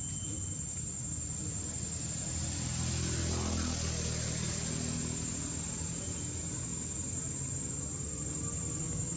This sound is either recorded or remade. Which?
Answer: recorded